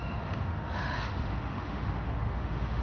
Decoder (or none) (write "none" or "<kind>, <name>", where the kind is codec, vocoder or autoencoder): autoencoder, DAC-VAE